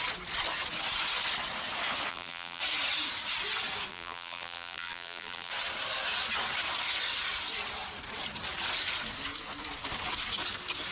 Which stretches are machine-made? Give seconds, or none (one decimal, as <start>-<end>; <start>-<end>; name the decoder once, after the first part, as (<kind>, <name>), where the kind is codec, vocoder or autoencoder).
2.1-2.6 (vocoder, BigVGAN v2); 3.9-5.5